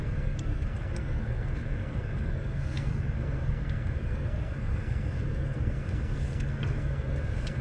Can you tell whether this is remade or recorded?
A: remade